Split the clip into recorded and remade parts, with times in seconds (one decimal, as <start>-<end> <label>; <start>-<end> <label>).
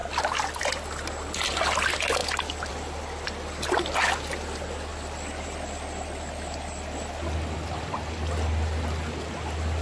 0.0-9.8 recorded